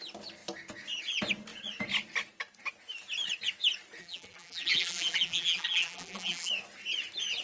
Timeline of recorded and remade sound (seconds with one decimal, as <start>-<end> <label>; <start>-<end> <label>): 0.0-4.0 recorded; 4.0-6.5 remade; 6.5-7.4 recorded